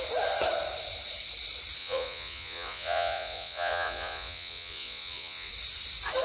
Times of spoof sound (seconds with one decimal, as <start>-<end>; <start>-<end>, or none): 1.8-5.5